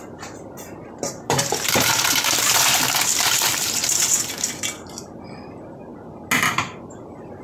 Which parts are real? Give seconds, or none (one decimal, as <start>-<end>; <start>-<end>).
5.9-6.5